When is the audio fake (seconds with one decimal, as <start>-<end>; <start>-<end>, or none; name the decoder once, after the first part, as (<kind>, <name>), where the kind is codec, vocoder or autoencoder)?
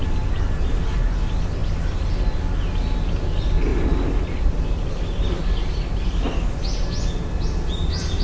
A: none